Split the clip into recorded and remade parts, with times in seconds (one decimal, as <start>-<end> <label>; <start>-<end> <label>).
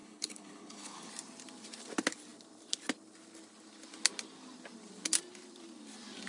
0.0-1.1 remade; 1.1-6.3 recorded